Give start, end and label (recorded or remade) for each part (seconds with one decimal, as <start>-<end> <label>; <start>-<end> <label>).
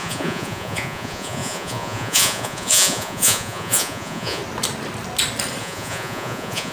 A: 0.0-4.4 remade; 4.4-5.6 recorded; 5.6-6.7 remade